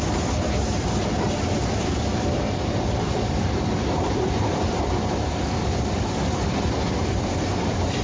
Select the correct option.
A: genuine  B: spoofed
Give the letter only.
B